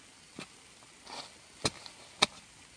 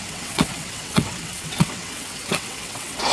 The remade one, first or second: second